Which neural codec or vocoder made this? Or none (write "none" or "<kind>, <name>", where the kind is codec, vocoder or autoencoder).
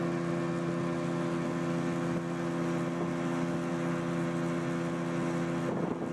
none